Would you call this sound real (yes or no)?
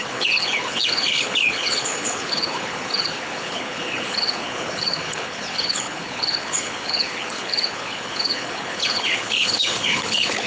no